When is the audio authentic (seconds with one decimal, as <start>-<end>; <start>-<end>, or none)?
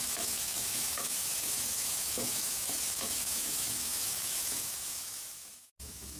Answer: none